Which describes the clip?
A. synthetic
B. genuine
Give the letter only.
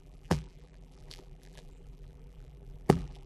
A